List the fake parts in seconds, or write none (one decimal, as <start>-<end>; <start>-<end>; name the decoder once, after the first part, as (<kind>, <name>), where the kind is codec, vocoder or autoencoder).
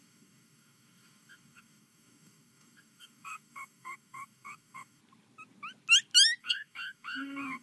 0.0-5.0 (codec, DAC); 6.4-7.6